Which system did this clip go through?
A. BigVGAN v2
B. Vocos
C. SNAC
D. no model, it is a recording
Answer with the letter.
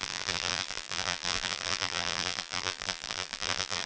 A